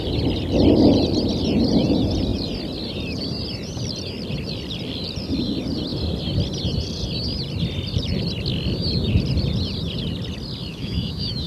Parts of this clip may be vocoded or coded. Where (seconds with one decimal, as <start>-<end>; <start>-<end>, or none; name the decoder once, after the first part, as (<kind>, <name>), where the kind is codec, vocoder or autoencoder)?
10.7-11.5 (autoencoder, DAC-VAE)